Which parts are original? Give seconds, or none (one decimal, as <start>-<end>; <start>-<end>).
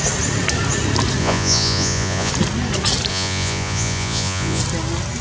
0.0-1.2; 2.3-3.1; 4.6-5.2